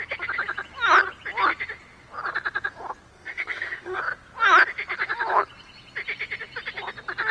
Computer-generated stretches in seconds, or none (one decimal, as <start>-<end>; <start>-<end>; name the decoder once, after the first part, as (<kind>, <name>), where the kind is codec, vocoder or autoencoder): 3.1-4.0 (codec, SNAC)